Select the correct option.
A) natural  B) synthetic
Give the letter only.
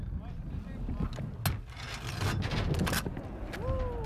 A